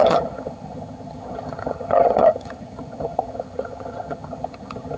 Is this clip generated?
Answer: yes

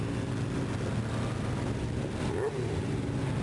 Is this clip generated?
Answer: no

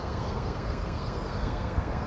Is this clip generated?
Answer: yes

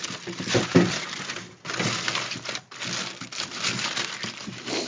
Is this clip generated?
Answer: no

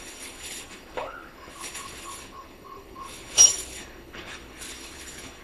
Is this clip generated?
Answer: yes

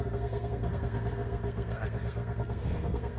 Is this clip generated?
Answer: yes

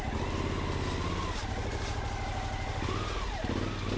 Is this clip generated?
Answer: no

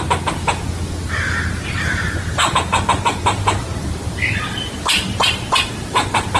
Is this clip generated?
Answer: no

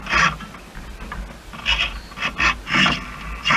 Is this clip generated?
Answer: no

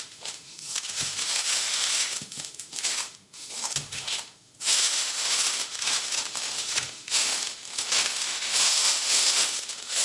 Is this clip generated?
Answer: yes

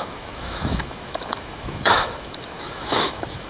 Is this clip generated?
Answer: yes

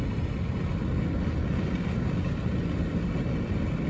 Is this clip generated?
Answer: no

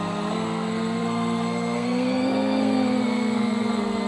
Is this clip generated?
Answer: yes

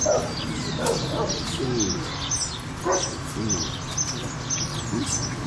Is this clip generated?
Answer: no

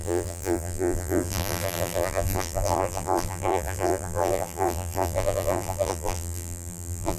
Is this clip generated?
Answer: yes